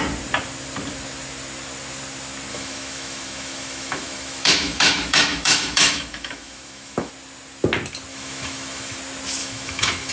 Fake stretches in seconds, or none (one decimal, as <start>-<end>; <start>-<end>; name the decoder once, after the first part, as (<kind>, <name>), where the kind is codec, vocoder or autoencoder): 2.5-7.1 (autoencoder, DAC-VAE); 8.1-9.0; 9.4-10.1